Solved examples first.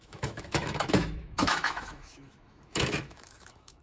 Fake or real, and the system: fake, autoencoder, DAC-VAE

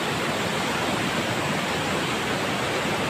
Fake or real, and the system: real